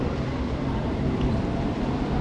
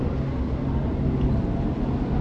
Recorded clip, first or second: second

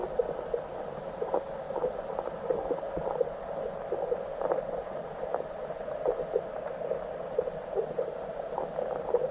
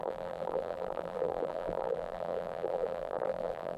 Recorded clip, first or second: first